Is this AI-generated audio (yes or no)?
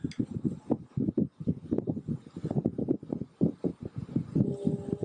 no